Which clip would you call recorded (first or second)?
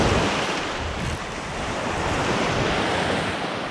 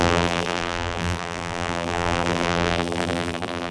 first